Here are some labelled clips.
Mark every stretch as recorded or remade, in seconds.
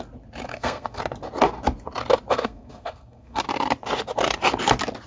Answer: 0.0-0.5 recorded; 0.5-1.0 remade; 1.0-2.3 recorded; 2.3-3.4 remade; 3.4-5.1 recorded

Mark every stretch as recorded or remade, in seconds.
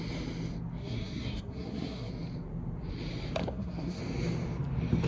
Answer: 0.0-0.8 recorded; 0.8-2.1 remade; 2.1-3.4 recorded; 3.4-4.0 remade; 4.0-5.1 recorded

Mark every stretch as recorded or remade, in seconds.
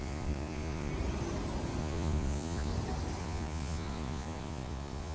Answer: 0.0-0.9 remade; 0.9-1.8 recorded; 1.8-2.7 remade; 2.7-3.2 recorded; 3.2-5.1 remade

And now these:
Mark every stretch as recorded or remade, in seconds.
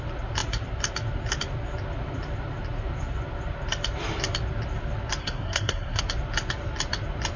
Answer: 0.0-5.2 recorded; 5.2-6.0 remade; 6.0-7.4 recorded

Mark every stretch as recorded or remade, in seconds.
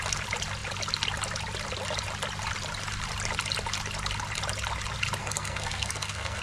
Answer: 0.0-5.2 recorded; 5.2-6.4 remade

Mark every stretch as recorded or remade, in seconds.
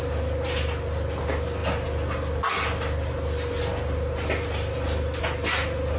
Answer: 0.0-6.0 recorded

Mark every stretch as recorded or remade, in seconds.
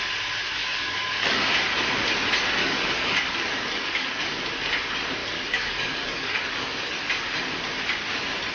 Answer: 0.0-0.6 recorded; 0.6-1.5 remade; 1.5-2.6 recorded; 2.6-4.4 remade; 4.4-5.2 recorded; 5.2-7.0 remade; 7.0-8.5 recorded